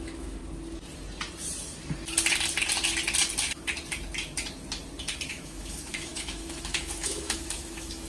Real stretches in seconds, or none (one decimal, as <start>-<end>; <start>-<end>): 0.4-5.3